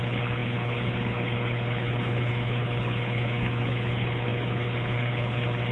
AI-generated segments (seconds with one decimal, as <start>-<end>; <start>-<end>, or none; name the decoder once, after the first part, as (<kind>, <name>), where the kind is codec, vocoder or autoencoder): 0.0-5.7 (codec, HILCodec)

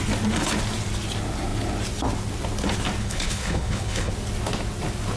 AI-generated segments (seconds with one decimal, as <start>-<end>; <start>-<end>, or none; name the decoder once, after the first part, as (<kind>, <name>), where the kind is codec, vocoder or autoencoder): 3.0-4.1 (codec, HILCodec)

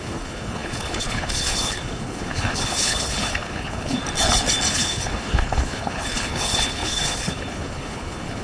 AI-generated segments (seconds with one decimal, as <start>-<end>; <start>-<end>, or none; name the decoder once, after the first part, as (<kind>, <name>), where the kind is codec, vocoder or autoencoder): 0.0-4.0 (codec, HILCodec); 4.7-8.4